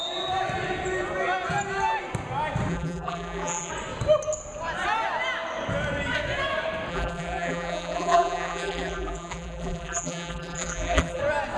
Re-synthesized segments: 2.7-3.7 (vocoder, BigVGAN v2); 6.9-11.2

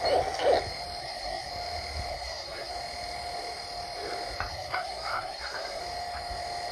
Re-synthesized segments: 1.0-1.5 (codec, SNAC); 2.1-2.7; 4.5-5.8